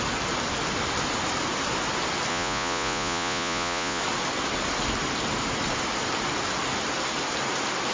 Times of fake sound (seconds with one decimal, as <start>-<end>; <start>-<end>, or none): 2.3-4.0